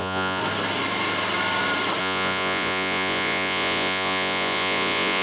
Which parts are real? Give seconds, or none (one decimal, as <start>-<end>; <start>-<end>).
0.4-2.0